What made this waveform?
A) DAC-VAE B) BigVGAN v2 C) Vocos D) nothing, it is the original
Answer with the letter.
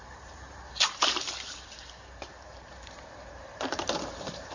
B